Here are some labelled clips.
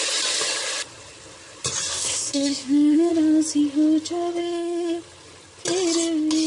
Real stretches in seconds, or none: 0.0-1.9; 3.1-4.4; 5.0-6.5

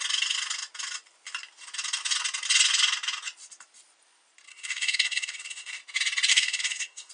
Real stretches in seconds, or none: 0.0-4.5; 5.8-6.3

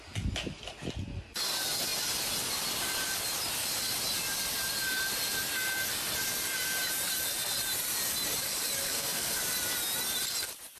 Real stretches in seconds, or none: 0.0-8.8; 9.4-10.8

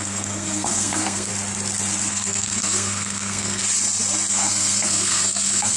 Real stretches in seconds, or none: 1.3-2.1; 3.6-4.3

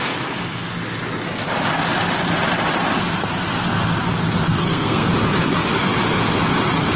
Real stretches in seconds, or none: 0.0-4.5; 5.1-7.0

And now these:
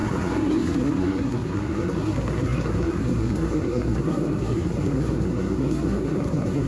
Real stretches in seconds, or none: none

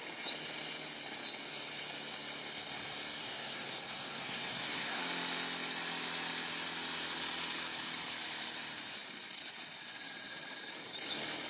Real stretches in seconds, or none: 0.0-3.2; 5.0-11.5

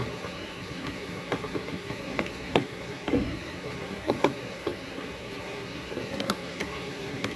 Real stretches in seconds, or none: none